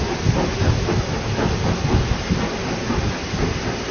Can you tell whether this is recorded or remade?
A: recorded